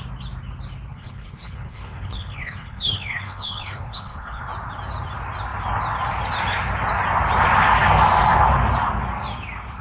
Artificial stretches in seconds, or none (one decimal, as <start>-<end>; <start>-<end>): 0.9-4.4